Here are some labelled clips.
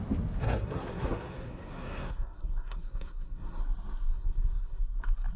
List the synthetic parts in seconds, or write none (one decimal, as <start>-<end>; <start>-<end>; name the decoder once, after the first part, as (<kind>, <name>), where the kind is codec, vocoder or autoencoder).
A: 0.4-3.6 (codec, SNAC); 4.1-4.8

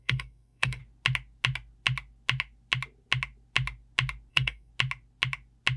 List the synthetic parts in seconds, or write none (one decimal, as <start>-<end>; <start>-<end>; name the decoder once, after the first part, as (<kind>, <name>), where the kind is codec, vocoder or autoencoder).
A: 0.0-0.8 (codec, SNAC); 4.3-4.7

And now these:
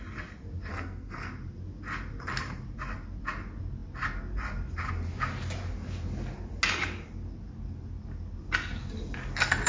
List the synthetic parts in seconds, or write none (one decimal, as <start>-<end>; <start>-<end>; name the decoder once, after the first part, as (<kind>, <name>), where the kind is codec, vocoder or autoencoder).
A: 0.7-1.3 (codec, SNAC)